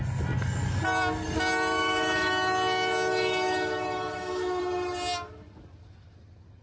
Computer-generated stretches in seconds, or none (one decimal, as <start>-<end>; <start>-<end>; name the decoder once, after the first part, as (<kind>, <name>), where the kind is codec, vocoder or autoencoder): 1.7-2.3 (autoencoder, DAC-VAE); 3.1-4.6